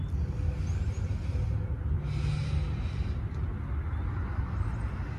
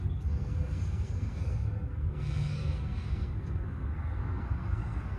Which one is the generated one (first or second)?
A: second